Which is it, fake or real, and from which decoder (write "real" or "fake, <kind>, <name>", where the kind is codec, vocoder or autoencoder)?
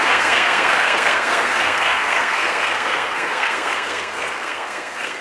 fake, codec, SNAC